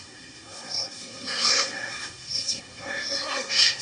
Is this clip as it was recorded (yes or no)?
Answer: no